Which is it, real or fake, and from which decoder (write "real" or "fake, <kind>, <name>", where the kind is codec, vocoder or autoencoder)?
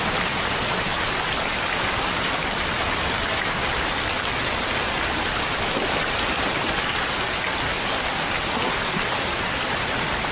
real